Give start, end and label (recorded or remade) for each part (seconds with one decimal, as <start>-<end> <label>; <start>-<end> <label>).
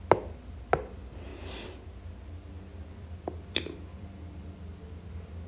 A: 0.0-1.3 recorded; 1.3-1.9 remade; 1.9-2.7 recorded; 2.7-4.3 remade; 4.3-5.5 recorded